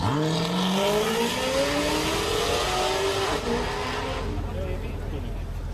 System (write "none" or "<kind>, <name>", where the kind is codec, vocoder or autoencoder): none